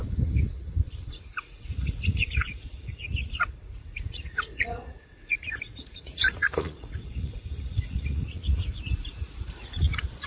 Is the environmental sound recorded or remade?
remade